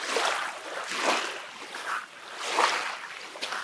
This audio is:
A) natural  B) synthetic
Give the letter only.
A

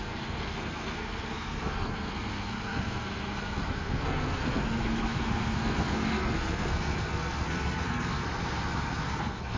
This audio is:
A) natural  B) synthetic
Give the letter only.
B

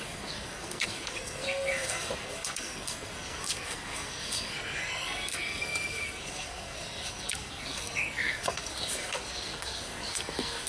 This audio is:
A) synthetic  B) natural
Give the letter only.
A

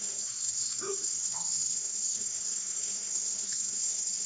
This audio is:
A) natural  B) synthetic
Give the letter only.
B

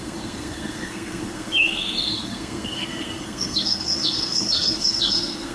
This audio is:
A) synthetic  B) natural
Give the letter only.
A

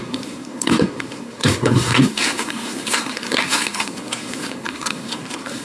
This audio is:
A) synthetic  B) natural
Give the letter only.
A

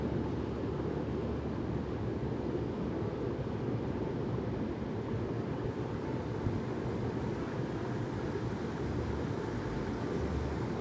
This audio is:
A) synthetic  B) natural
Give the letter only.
B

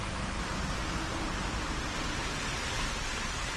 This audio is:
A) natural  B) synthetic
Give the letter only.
A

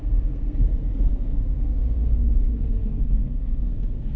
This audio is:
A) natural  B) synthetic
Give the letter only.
B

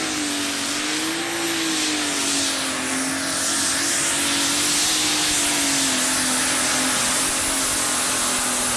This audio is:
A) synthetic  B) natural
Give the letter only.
B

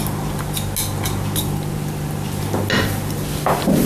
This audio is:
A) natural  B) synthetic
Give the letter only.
A